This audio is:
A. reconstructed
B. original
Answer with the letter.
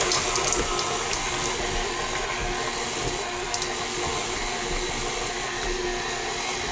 B